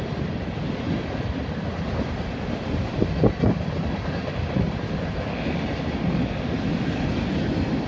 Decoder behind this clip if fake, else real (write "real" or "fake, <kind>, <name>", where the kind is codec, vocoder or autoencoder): real